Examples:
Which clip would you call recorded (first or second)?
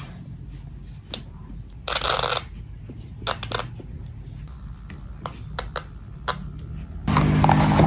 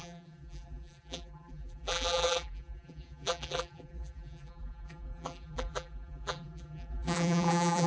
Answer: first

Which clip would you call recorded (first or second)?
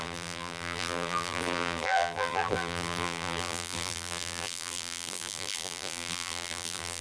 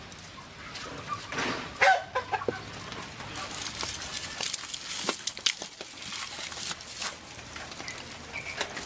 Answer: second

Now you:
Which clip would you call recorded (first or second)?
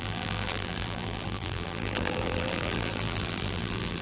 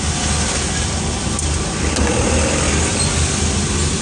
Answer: second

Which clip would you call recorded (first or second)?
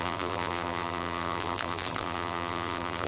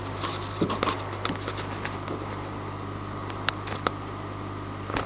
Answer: second